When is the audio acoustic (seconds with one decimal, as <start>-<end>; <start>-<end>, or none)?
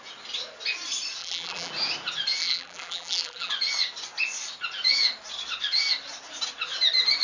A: 0.0-1.2; 1.7-2.4; 3.5-7.2